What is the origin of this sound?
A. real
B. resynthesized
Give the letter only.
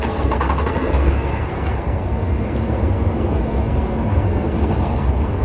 B